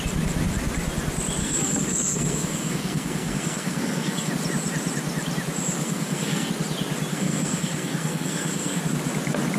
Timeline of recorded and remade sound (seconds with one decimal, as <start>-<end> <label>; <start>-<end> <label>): 0.0-1.4 recorded; 1.4-4.3 remade; 4.3-5.8 recorded; 5.8-6.5 remade; 6.5-7.1 recorded; 7.1-8.8 remade; 8.8-9.6 recorded